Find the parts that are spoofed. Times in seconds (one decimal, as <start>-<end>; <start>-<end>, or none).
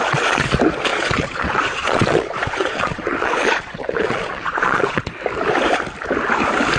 0.9-5.0